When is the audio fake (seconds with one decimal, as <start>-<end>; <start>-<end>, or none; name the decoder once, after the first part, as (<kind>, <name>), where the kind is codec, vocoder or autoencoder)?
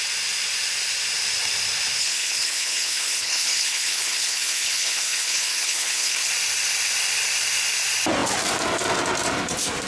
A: 2.0-6.3 (codec, HILCodec)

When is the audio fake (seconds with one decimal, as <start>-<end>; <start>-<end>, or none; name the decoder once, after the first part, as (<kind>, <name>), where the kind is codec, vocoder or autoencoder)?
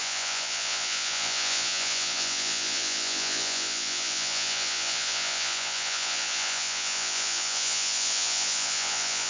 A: 0.0-9.3 (vocoder, Vocos)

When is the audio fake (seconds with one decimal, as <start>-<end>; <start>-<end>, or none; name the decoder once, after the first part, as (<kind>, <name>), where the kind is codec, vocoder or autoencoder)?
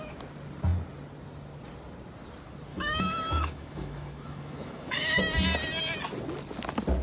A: 2.7-5.2 (autoencoder, DAC-VAE)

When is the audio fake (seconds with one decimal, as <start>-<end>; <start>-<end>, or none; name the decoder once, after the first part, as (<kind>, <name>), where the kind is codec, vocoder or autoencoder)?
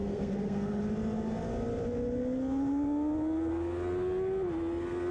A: 0.0-0.8 (codec, SNAC)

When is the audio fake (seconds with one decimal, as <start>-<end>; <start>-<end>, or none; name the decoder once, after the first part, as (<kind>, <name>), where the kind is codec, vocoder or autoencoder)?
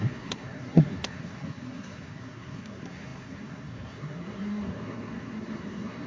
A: 0.0-6.1 (codec, SNAC)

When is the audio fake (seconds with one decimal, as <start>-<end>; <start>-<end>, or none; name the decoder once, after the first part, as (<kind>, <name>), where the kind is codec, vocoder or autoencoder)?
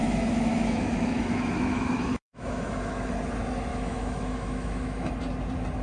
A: 0.0-3.1 (autoencoder, DAC-VAE); 3.7-5.1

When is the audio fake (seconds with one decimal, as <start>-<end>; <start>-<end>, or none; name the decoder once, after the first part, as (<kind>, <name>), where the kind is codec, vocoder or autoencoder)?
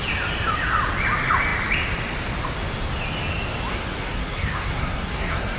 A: 3.7-5.6 (codec, SNAC)